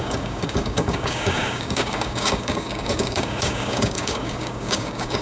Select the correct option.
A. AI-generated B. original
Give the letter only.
A